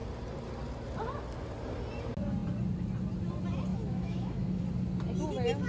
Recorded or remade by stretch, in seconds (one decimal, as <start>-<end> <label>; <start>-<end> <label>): 0.0-3.7 recorded; 3.7-4.6 remade; 4.6-5.7 recorded